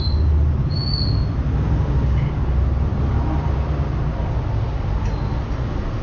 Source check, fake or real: real